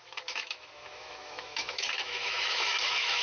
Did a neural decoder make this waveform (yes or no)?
yes